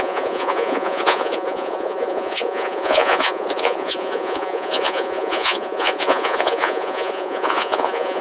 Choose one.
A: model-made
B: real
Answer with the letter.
A